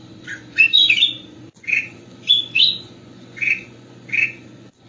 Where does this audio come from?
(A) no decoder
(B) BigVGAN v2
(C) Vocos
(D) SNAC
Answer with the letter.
C